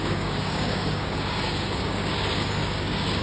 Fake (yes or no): yes